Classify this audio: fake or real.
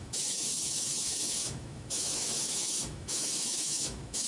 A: fake